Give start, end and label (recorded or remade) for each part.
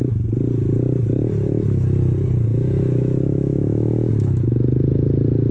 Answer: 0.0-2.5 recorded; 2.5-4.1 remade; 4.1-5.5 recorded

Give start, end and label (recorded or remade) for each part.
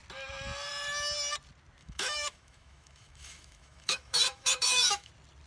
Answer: 0.0-1.8 recorded; 1.8-5.1 remade; 5.1-5.5 recorded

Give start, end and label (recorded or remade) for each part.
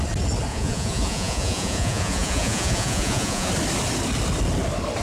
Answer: 0.0-0.5 recorded; 0.5-3.5 remade; 3.5-5.0 recorded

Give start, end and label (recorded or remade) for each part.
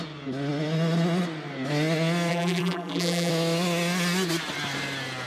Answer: 0.0-2.3 recorded; 2.3-3.3 remade; 3.3-5.3 recorded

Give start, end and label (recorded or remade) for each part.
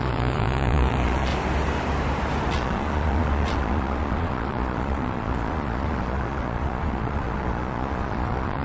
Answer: 0.0-1.3 remade; 1.3-2.5 recorded; 2.5-8.6 remade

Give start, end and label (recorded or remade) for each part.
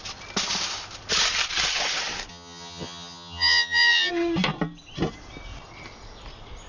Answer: 0.0-2.3 recorded; 2.3-4.1 remade; 4.1-6.7 recorded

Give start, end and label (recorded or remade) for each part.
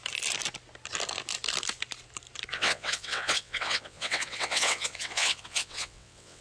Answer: 0.0-2.5 recorded; 2.5-6.4 remade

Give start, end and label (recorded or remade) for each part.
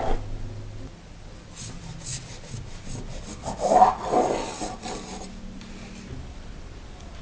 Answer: 0.0-7.2 recorded